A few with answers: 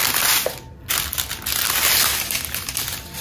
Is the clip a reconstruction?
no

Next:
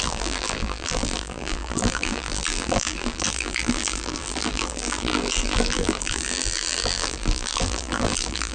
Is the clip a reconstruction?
yes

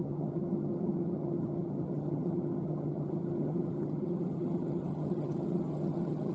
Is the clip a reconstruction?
yes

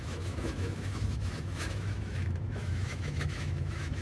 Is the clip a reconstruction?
yes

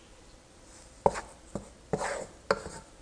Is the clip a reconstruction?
no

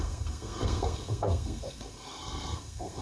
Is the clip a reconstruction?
yes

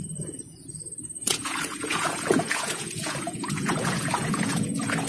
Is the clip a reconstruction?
yes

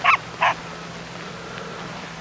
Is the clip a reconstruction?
no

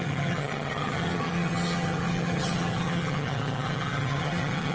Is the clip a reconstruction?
yes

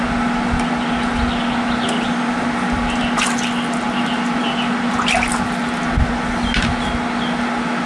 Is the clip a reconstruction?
no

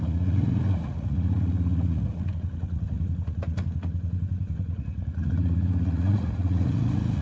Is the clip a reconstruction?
yes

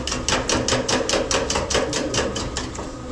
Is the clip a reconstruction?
no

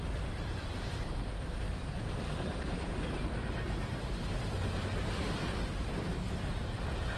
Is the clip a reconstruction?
yes